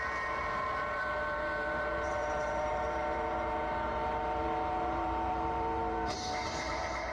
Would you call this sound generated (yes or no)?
yes